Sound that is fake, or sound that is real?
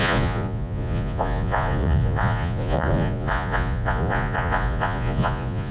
fake